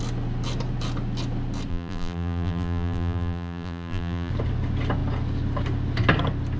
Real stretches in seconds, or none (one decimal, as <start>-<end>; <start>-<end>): 0.0-1.7; 4.3-6.6